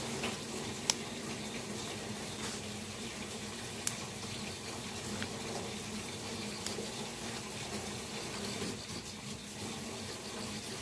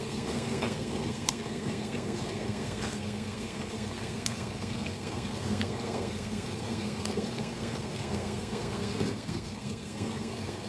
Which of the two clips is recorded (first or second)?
first